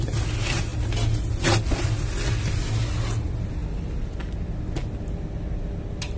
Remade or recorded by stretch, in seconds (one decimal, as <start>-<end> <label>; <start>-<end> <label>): 0.0-6.2 recorded